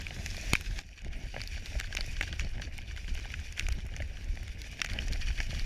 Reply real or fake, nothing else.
real